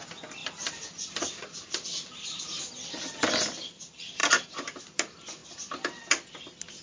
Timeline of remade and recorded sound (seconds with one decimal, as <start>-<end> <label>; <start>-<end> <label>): 0.0-0.4 recorded; 0.4-2.4 remade; 2.4-4.2 recorded; 4.2-4.8 remade; 4.8-6.8 recorded